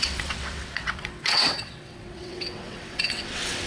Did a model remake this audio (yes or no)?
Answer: yes